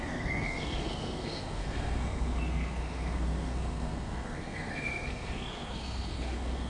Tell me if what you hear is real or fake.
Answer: fake